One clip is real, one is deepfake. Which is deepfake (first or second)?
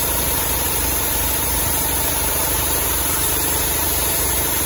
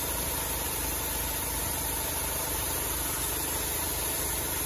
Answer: first